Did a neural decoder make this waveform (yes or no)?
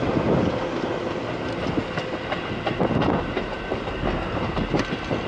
no